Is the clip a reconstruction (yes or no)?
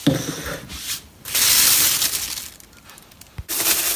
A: no